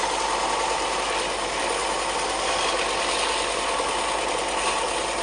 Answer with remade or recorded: recorded